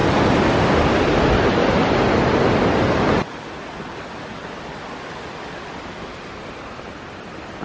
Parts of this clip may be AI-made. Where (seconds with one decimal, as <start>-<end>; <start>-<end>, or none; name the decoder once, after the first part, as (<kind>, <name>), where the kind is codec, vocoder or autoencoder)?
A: none